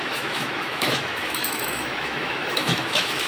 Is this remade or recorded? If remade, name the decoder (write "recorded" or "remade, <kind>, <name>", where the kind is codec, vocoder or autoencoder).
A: remade, autoencoder, DAC-VAE